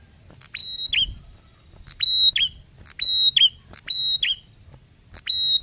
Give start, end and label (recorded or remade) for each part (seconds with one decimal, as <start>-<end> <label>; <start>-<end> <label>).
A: 0.0-5.6 recorded